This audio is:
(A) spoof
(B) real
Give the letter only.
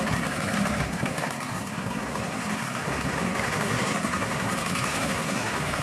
A